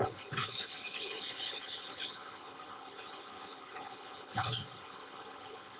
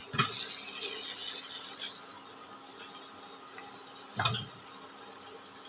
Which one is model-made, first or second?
first